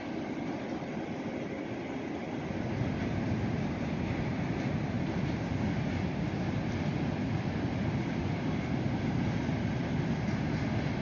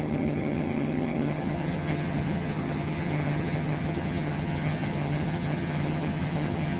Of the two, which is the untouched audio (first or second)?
first